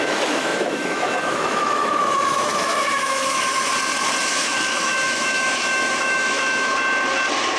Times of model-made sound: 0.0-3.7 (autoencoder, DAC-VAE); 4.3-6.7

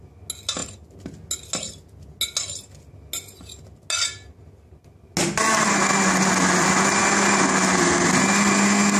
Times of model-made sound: none

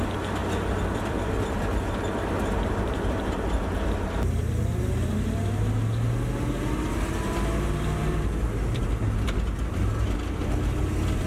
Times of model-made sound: none

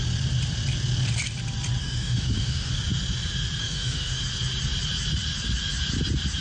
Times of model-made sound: 1.8-2.7 (autoencoder, DAC-VAE); 3.6-4.2